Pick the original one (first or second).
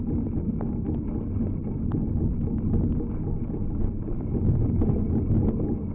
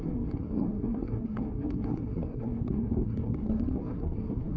first